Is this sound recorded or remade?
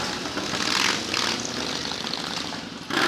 recorded